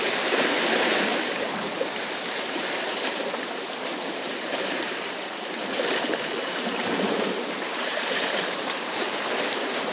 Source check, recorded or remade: remade